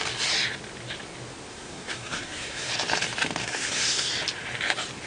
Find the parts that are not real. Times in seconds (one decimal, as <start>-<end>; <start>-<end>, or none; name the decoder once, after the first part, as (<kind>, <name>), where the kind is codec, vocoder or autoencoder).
1.5-2.7 (codec, SNAC); 3.4-4.1